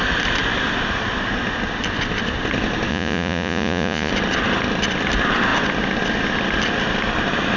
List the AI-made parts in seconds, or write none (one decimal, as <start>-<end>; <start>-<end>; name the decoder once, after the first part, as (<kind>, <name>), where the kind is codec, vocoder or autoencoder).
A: 2.9-4.1 (vocoder, Vocos)